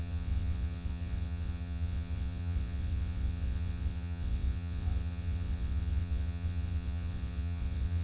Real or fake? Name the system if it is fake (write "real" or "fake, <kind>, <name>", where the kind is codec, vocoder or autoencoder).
fake, vocoder, WaveNeXt